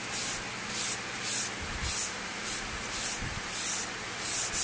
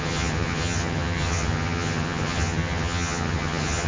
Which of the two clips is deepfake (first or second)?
second